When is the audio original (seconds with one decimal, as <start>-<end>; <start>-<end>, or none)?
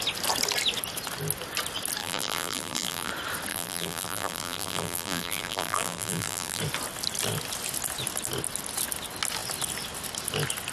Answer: 0.0-2.0; 3.1-3.5; 6.6-10.7